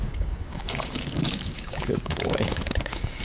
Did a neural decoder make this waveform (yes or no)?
yes